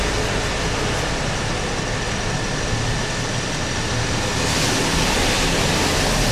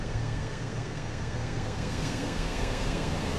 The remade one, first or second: second